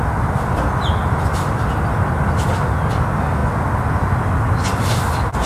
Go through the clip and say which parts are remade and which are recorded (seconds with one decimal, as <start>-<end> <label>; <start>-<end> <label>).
0.0-5.5 recorded